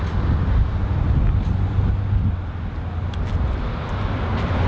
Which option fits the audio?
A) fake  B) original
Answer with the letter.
B